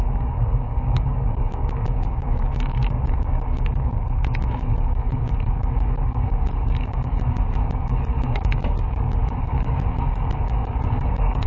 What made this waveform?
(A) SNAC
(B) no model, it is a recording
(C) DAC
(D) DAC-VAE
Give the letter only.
C